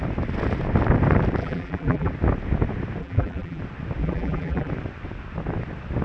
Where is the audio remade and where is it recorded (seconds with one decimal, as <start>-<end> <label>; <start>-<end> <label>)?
0.0-1.4 recorded; 1.4-2.1 remade; 2.1-3.0 recorded; 3.0-3.6 remade; 3.6-4.0 recorded; 4.0-4.7 remade; 4.7-6.0 recorded